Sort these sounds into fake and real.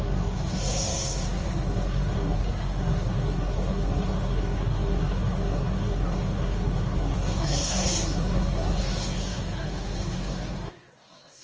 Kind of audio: fake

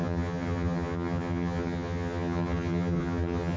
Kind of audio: fake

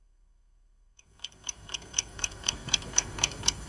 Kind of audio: fake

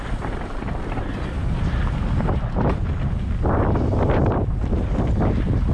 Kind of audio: real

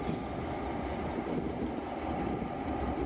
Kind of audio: real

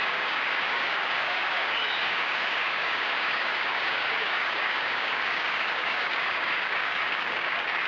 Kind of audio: fake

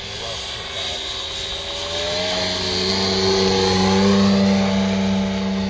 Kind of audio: real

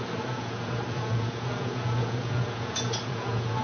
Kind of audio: fake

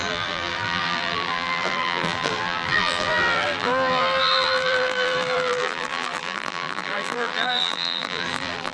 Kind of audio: fake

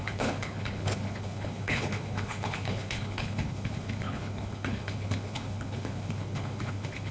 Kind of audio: fake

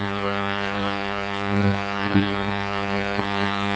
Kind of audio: fake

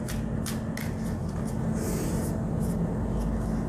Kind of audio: real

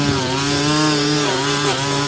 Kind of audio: real